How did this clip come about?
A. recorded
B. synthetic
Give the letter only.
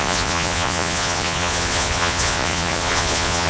B